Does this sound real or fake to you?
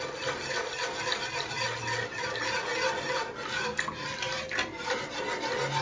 real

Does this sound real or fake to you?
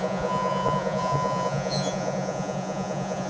fake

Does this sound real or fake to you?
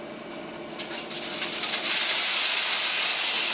real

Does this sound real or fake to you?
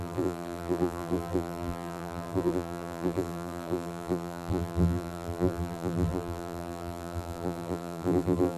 fake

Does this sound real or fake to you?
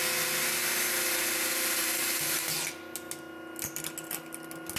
real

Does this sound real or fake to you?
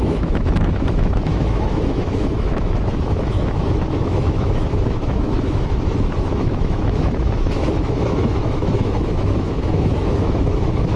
fake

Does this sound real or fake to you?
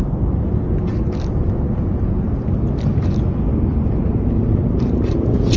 real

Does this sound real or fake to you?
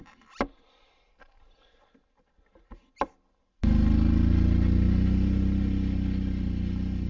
real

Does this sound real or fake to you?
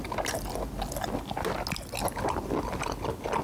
real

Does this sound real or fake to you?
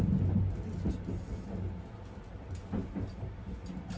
real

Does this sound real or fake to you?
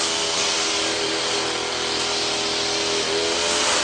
real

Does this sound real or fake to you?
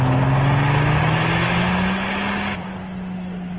real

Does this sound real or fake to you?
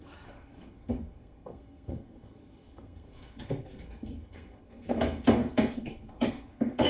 fake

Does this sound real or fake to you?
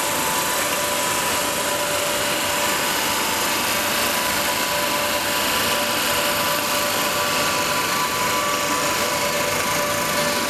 real